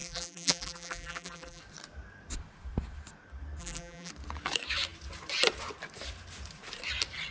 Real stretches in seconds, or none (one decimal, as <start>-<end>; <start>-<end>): 1.6-3.6; 4.1-7.3